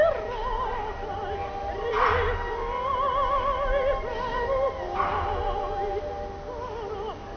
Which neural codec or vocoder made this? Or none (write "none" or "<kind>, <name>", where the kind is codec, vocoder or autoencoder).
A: none